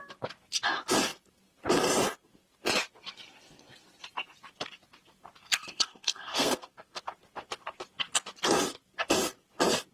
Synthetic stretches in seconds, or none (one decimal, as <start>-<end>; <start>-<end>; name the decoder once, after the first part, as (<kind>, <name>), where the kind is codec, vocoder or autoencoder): 5.4-7.0 (codec, SNAC)